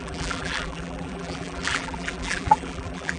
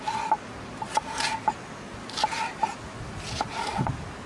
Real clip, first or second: second